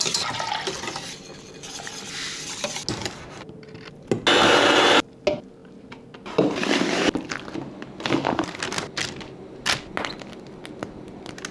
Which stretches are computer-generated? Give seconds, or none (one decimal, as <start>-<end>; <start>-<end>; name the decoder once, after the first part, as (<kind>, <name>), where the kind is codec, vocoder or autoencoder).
none